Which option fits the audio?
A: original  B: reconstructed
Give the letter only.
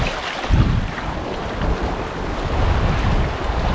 A